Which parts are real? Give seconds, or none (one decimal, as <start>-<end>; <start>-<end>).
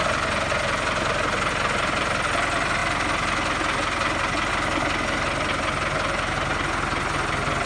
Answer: 0.0-7.7